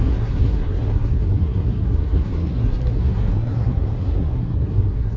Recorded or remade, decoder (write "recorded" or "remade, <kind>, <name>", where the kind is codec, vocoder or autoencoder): remade, codec, SNAC